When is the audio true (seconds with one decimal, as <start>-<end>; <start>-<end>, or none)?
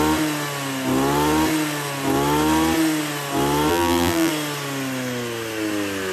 0.0-3.7; 4.3-6.1